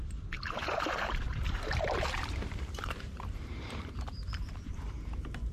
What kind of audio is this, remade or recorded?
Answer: remade